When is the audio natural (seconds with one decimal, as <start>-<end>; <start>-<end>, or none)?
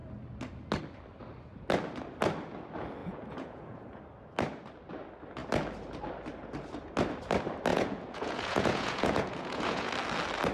0.0-3.0; 4.0-7.7; 9.9-10.5